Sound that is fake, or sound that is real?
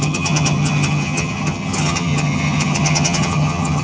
fake